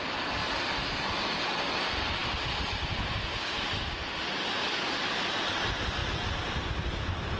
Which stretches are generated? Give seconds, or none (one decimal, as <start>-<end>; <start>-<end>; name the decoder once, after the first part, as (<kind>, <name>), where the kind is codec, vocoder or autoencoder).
none